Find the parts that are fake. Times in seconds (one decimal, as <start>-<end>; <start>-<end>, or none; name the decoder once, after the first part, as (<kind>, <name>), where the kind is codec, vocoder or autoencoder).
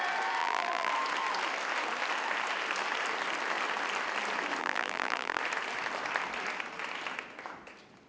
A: 0.4-0.9 (vocoder, BigVGAN v2); 4.6-5.4